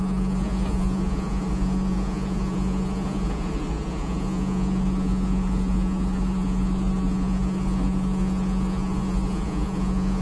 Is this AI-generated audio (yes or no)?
yes